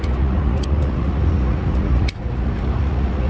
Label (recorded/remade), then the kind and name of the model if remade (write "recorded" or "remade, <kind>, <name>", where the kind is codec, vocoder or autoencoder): remade, vocoder, Vocos